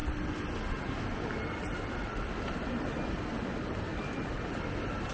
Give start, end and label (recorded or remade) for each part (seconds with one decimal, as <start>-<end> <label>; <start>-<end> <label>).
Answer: 0.0-5.1 recorded